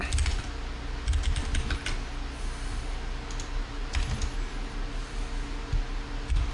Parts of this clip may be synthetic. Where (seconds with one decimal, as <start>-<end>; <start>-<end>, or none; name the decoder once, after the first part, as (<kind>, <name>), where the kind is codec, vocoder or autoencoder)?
none